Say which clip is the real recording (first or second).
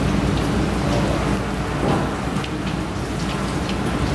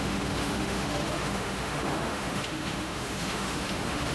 first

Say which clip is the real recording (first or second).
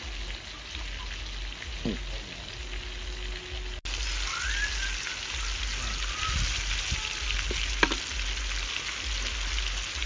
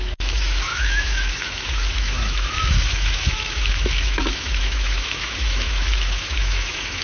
first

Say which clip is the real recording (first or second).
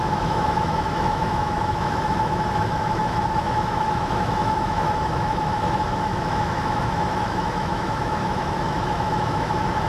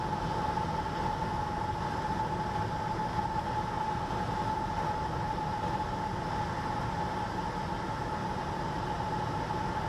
second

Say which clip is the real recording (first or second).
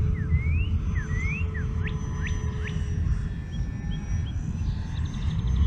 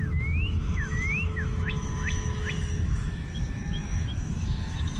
first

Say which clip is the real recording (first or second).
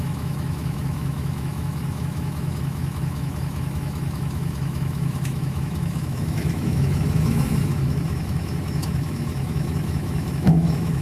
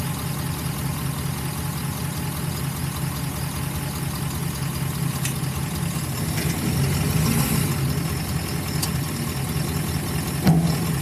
second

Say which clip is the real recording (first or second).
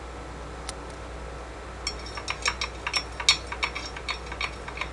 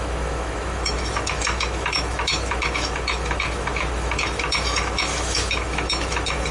first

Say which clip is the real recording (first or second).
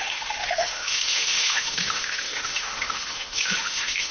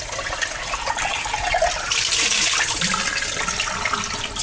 second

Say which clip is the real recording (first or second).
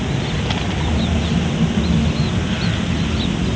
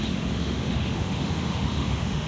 first